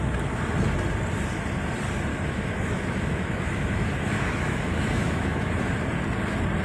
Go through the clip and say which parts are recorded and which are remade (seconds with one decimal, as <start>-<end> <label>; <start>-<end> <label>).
0.0-2.1 recorded; 2.1-5.5 remade; 5.5-6.6 recorded